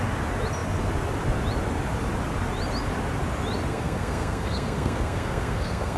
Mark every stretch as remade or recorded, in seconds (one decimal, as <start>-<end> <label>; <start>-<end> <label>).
0.0-3.7 recorded; 3.7-6.0 remade